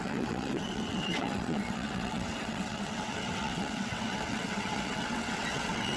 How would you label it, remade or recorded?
remade